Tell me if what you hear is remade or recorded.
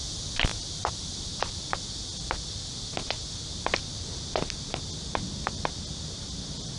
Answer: recorded